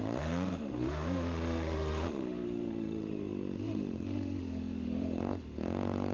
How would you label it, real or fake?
fake